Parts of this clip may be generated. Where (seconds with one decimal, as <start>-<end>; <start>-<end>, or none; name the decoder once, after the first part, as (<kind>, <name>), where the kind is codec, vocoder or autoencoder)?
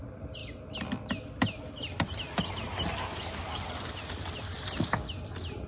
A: none